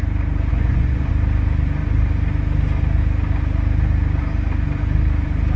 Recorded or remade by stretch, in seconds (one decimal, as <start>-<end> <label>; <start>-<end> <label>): 0.0-0.5 recorded; 0.5-1.1 remade; 1.1-5.6 recorded